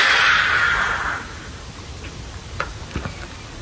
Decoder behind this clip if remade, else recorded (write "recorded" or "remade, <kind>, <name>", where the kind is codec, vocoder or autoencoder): remade, vocoder, BigVGAN v2